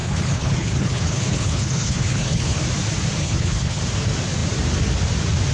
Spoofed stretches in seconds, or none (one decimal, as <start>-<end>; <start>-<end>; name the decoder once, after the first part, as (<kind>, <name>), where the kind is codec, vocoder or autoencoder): 0.0-2.6 (codec, HILCodec); 3.2-3.8